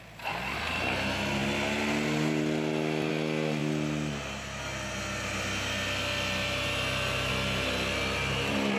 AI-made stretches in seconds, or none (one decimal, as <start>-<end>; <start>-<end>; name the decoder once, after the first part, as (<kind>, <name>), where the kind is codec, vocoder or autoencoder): none